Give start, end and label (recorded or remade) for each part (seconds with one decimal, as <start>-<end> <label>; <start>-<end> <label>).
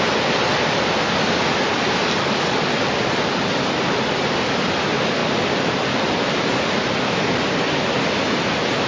0.0-8.9 recorded